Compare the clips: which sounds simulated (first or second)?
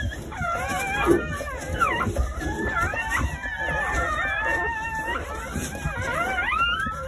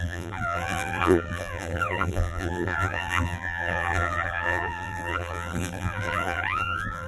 second